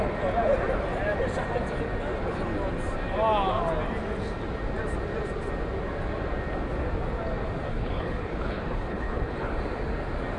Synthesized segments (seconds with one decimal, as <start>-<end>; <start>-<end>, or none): 7.7-9.6